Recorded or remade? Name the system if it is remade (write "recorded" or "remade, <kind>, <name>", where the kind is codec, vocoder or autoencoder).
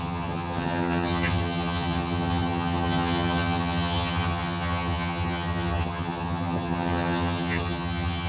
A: remade, vocoder, HiFi-GAN